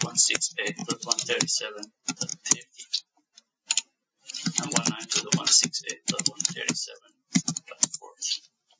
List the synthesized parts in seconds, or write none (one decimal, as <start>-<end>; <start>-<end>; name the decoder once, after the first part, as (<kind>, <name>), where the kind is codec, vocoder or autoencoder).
none